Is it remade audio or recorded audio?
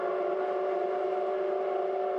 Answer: recorded